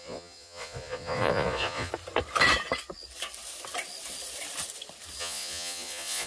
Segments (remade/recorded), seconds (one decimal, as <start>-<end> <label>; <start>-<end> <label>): 0.0-1.9 remade; 1.9-5.2 recorded; 5.2-6.3 remade